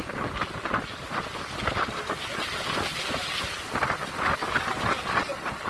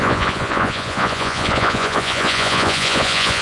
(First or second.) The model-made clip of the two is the second